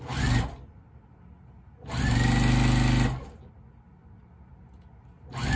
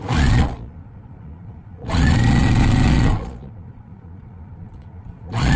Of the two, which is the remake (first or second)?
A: second